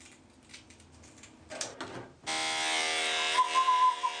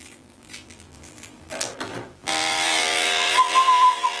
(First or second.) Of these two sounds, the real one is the first